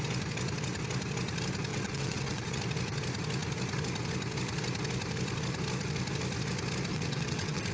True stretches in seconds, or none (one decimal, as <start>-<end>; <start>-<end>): 0.0-1.7; 2.6-6.9